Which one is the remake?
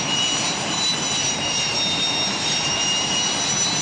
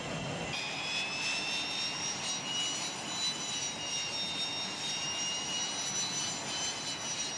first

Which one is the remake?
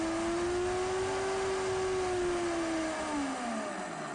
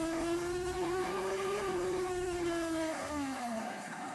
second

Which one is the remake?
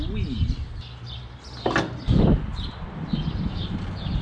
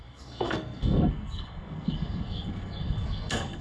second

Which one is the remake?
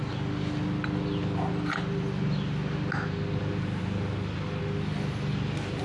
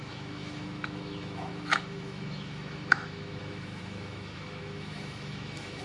second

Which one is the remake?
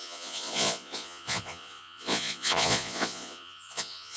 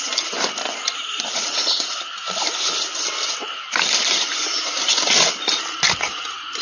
first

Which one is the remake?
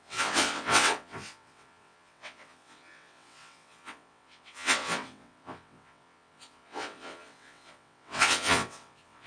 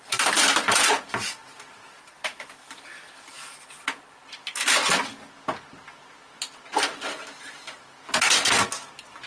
first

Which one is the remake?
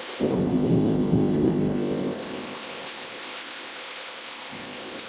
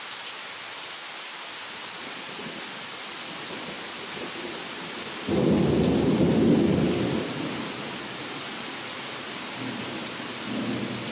first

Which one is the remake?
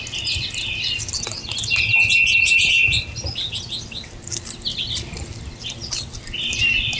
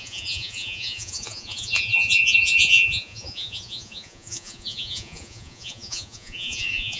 second